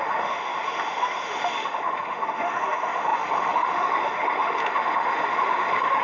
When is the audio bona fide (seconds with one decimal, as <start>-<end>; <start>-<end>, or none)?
none